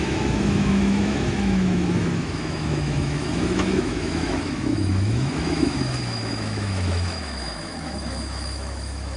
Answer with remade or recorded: remade